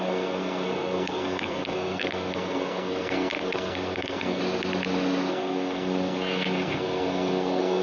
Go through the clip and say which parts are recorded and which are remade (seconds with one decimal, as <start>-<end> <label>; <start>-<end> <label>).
0.0-4.4 remade; 4.4-5.3 recorded; 5.3-7.8 remade

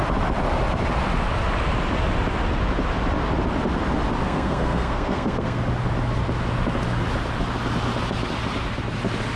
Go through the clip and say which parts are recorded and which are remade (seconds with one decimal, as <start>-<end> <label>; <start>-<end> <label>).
0.0-4.2 recorded; 4.2-5.6 remade; 5.6-9.4 recorded

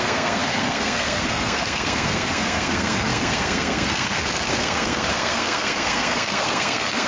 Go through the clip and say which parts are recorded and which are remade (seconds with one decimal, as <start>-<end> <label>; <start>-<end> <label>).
0.0-7.1 remade

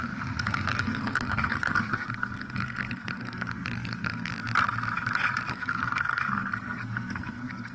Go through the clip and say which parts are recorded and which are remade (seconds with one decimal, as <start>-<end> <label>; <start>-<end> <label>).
0.0-4.3 remade; 4.3-5.5 recorded; 5.5-7.7 remade

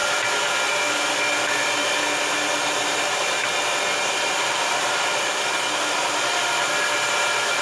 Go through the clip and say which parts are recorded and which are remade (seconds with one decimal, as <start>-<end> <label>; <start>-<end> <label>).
0.0-7.6 recorded

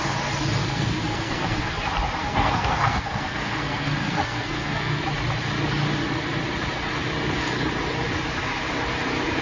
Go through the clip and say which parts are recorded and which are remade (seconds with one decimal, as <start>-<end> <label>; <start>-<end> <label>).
0.0-0.6 recorded; 0.6-1.6 remade; 1.6-2.2 recorded; 2.2-5.0 remade; 5.0-9.4 recorded

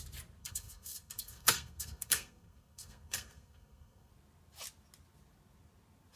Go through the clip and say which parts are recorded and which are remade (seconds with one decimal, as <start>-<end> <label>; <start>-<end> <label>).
0.0-0.4 recorded; 0.4-4.1 remade; 4.1-6.2 recorded